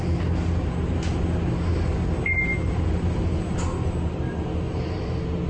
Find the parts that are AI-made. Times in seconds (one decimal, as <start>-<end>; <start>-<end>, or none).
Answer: none